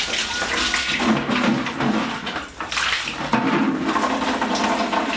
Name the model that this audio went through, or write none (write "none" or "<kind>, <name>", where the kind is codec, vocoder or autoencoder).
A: none